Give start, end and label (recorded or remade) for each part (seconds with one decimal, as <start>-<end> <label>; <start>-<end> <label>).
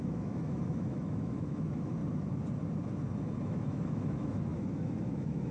0.0-2.0 remade; 2.0-3.4 recorded; 3.4-5.5 remade